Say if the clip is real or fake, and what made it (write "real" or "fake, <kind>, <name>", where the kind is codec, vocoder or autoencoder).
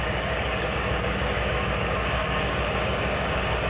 fake, codec, DAC